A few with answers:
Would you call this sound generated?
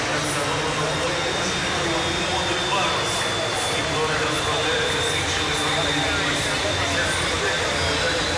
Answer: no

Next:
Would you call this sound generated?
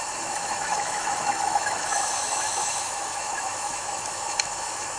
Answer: yes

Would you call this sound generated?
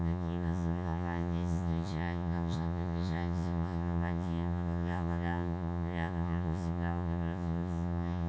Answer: yes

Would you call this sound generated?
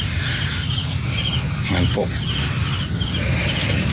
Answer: no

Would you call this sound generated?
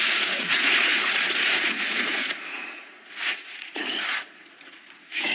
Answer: yes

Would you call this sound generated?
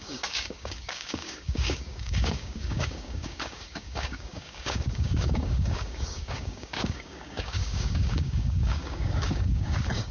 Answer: yes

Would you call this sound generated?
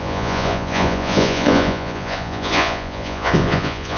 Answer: yes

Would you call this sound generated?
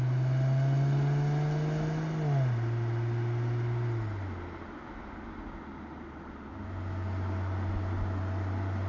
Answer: no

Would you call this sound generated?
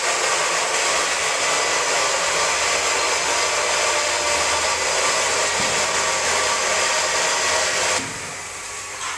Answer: no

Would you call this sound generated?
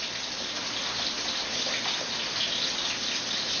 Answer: no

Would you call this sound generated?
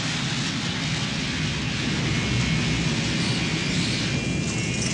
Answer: no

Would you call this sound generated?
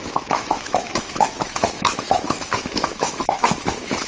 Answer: yes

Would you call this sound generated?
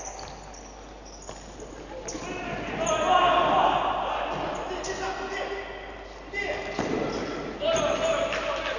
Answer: no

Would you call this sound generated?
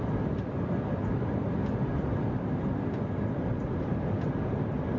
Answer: no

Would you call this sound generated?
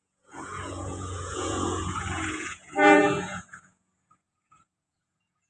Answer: yes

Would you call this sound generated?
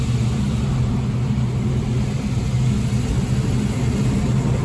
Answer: no